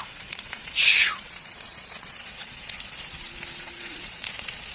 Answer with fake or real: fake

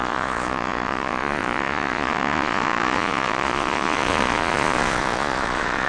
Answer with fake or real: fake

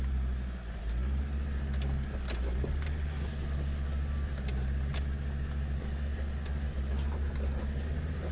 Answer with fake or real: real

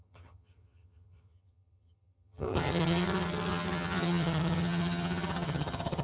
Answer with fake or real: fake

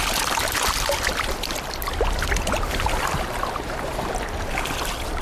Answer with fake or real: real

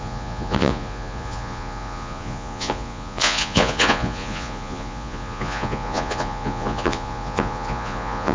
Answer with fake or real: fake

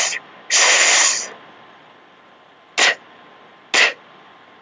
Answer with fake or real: real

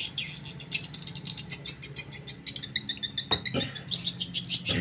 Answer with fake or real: real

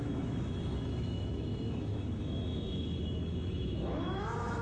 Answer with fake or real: fake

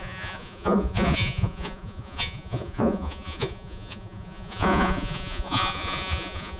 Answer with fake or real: fake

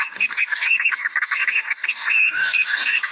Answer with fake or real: fake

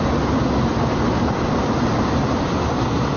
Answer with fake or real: real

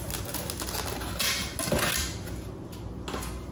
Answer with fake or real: real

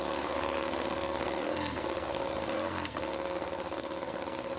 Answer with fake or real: fake